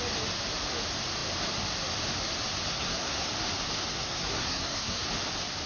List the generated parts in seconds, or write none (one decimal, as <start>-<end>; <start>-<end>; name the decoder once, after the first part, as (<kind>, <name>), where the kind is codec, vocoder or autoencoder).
2.7-3.3 (codec, SNAC); 3.9-5.0